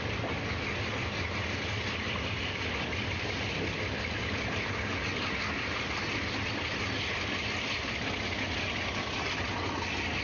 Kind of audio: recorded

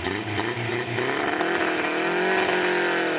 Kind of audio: recorded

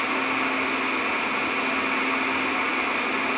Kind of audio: recorded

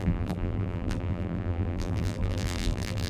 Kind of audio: remade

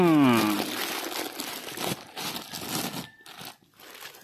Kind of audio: recorded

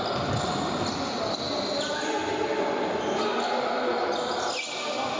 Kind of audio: recorded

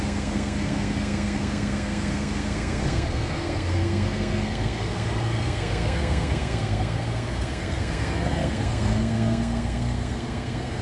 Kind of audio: remade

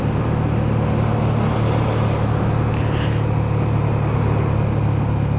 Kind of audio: recorded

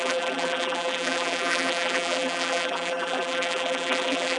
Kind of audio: remade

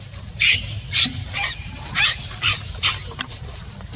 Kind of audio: remade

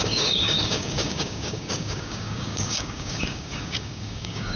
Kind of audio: remade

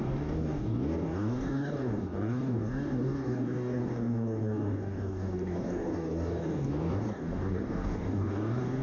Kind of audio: remade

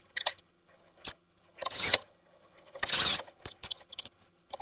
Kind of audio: remade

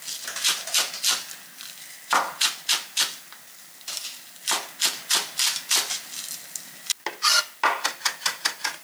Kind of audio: recorded